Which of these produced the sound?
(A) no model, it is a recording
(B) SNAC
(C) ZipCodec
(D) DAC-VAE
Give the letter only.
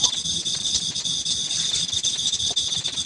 A